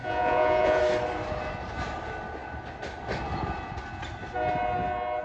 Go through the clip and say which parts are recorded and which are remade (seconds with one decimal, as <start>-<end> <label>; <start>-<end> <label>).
0.0-0.8 remade; 0.8-5.2 recorded